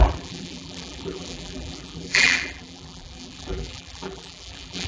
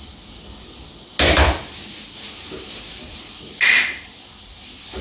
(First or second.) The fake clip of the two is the first